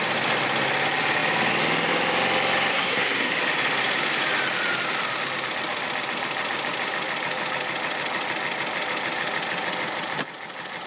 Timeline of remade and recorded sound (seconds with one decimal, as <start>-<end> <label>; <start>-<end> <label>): 0.0-2.7 recorded; 2.7-3.3 remade; 3.3-10.9 recorded